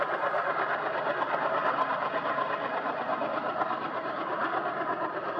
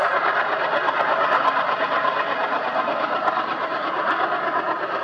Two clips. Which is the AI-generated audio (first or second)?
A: first